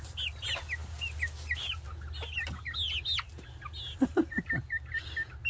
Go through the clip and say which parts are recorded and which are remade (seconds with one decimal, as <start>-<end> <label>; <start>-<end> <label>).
0.0-5.5 recorded